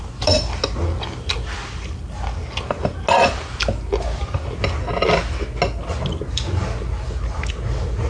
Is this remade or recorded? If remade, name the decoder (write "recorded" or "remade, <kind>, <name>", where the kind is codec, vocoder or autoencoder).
recorded